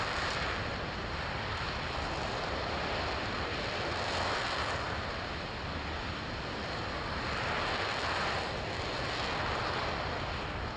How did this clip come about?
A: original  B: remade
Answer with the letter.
A